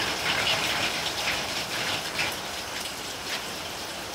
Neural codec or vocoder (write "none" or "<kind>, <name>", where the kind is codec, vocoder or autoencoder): vocoder, BigVGAN v2